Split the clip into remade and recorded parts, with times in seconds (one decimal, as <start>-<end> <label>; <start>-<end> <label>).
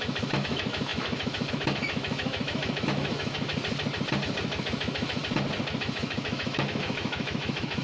0.0-3.5 remade; 3.5-4.6 recorded; 4.6-5.2 remade; 5.2-5.8 recorded; 5.8-7.8 remade